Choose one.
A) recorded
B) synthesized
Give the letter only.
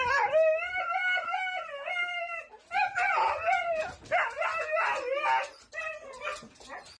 A